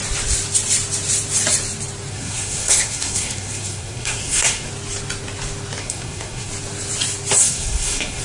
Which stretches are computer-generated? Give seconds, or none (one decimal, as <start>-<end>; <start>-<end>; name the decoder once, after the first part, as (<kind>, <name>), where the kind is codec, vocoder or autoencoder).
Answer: 2.1-4.7 (codec, SNAC); 5.8-6.5; 7.4-8.2